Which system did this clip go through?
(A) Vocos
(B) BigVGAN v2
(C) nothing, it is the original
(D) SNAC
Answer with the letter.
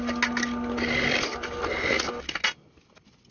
C